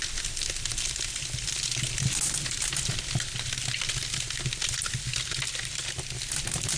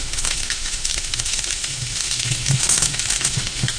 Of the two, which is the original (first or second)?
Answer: first